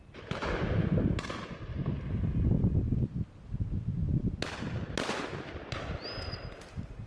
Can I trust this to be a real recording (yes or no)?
yes